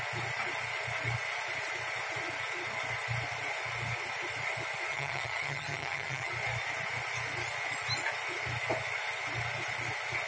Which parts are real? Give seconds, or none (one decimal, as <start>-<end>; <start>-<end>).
0.0-4.9; 6.3-10.3